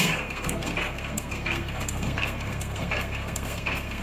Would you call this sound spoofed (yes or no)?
yes